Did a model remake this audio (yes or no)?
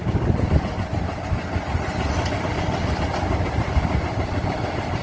no